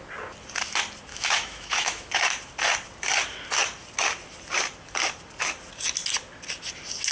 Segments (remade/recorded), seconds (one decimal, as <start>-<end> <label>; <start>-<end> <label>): 0.0-1.1 recorded; 1.1-2.1 remade; 2.1-7.1 recorded